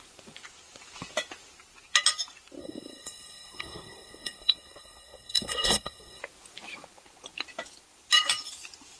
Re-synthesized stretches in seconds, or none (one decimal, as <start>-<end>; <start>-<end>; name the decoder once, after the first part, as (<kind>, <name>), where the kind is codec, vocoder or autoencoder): 2.6-6.2 (codec, SNAC)